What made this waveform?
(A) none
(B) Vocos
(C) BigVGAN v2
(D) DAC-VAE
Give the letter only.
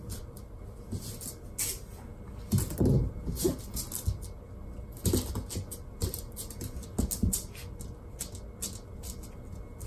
A